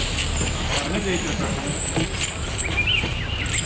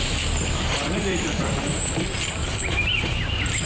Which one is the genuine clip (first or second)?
first